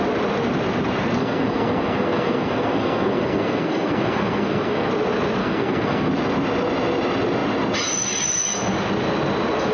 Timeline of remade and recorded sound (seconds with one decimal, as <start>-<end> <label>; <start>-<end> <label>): 0.0-1.2 recorded; 1.2-4.9 remade; 4.9-5.4 recorded; 5.4-6.1 remade; 6.1-9.7 recorded